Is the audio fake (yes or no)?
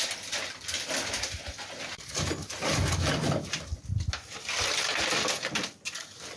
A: no